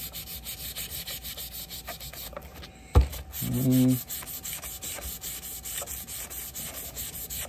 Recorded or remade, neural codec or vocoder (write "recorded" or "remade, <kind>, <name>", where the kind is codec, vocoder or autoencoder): recorded